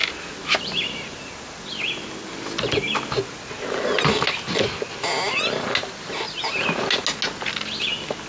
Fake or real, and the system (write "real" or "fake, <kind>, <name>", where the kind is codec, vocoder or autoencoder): real